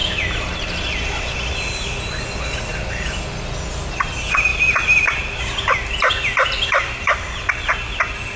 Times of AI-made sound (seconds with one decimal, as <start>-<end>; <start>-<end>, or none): none